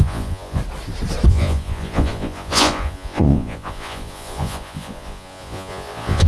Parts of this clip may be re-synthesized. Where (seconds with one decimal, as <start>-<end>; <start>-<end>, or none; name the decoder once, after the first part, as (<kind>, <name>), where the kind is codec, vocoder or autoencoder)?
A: 0.0-0.6 (vocoder, Vocos); 1.3-6.3

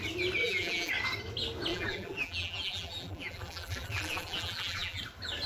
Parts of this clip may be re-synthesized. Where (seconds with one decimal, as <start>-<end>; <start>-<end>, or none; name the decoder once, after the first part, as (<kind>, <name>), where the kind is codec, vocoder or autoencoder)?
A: 0.4-0.9 (vocoder, BigVGAN v2); 1.7-5.0

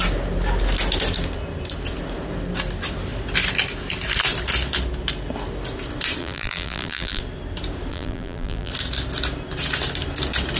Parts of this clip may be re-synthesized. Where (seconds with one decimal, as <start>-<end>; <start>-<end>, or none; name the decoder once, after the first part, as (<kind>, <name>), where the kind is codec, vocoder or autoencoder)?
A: 6.2-7.2 (vocoder, BigVGAN v2); 7.9-8.7

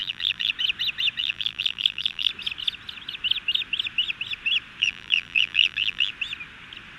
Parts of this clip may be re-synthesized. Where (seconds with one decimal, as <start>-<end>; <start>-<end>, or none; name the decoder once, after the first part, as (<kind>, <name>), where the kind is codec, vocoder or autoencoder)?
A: 0.0-0.5 (vocoder, BigVGAN v2); 1.2-2.3; 4.8-6.1

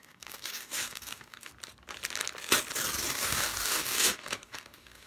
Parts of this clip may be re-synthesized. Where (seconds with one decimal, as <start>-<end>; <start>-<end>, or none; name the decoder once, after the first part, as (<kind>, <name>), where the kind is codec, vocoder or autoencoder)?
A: 0.0-1.5 (codec, DAC); 3.1-5.1